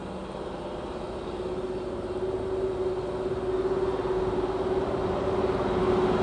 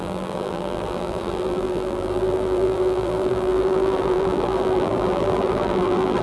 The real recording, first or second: first